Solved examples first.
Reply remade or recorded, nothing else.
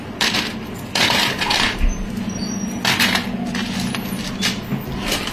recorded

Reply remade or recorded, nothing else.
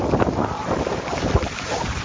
recorded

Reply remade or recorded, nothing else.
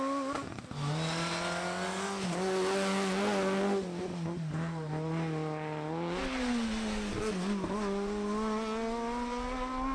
recorded